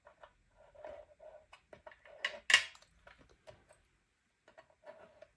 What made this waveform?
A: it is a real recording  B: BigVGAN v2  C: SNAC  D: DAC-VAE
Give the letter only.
A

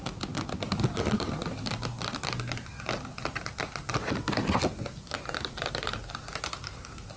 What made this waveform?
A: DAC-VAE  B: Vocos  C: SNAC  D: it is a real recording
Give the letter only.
D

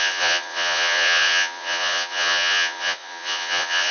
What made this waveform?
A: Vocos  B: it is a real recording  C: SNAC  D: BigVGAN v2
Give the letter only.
A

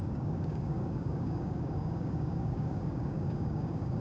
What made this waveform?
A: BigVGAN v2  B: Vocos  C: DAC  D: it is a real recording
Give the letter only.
C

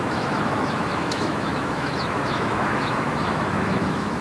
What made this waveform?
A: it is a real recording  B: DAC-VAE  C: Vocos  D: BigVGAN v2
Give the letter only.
B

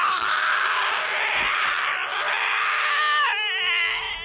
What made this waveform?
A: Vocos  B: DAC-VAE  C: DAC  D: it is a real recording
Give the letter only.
D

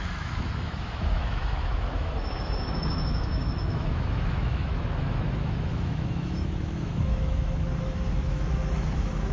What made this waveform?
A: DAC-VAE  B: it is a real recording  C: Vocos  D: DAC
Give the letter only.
A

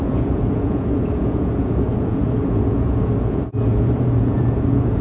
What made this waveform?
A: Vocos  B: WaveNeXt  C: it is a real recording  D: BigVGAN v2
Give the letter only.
A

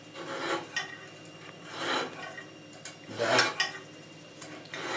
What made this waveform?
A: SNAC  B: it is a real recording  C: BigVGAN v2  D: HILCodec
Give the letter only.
B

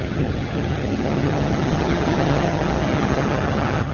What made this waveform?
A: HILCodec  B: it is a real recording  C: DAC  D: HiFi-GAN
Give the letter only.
D